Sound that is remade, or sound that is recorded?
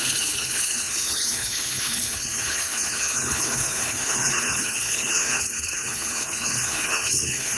remade